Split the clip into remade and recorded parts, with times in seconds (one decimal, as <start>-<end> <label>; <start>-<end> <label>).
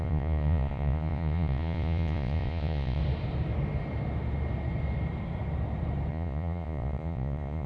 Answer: 0.0-3.0 remade; 3.0-6.1 recorded; 6.1-7.7 remade